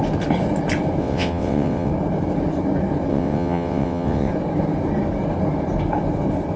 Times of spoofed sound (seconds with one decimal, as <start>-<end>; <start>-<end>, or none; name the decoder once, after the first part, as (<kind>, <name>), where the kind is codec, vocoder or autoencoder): 1.0-1.9 (vocoder, WaveNeXt); 3.1-4.3